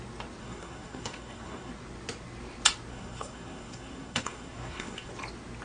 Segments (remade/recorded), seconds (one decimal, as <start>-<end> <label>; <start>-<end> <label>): 0.0-0.4 recorded; 0.4-1.7 remade; 1.7-2.9 recorded; 2.9-5.1 remade; 5.1-5.6 recorded